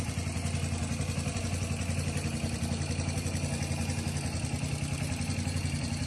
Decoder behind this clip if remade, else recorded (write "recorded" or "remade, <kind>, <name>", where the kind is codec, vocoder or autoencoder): recorded